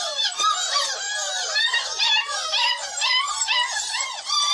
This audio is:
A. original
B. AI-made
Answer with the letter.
B